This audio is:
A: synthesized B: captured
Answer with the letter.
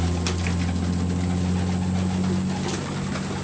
B